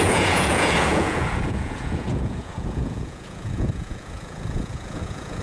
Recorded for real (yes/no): no